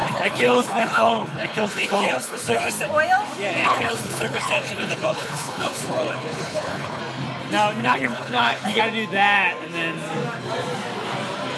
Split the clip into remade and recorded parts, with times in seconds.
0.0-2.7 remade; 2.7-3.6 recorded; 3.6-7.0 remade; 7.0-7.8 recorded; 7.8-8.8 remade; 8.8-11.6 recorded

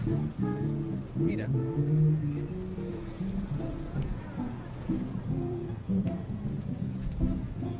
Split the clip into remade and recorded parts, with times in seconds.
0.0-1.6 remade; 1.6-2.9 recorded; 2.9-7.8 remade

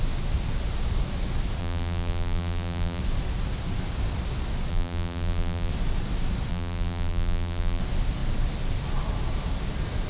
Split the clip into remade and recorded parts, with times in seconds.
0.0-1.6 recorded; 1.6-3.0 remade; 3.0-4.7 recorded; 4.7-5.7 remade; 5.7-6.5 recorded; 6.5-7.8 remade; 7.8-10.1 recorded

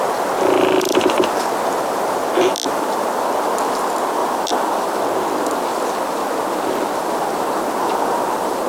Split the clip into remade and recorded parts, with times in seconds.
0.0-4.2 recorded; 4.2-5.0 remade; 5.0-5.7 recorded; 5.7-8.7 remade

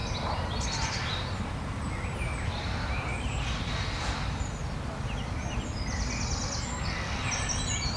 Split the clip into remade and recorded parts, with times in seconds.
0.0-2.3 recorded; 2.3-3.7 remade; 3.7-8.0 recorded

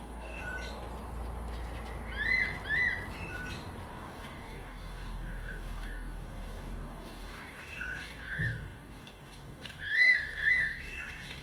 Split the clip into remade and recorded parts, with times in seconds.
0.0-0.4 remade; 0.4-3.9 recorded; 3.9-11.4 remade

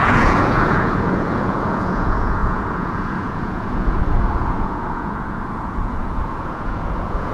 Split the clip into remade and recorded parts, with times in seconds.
0.0-7.3 remade

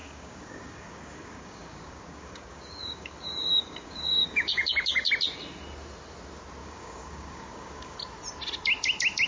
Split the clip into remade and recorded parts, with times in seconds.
0.0-5.1 remade; 5.1-6.6 recorded; 6.6-8.0 remade; 8.0-9.3 recorded